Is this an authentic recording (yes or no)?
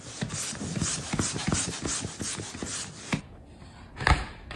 yes